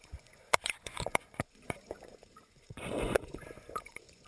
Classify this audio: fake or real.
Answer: fake